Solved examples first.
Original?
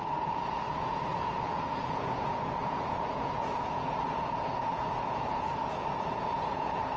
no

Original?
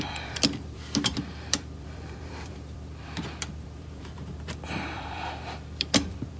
no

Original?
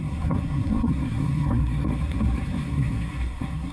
no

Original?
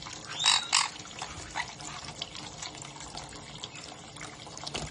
yes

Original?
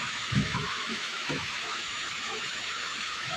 no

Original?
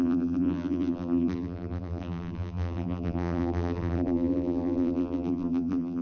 no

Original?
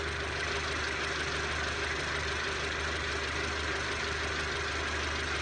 yes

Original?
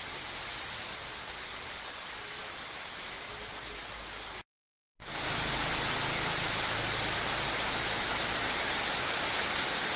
yes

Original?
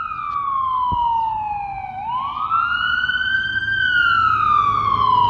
yes